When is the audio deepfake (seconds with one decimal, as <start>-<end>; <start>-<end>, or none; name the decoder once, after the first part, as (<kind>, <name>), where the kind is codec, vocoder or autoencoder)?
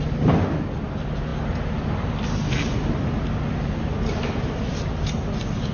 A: none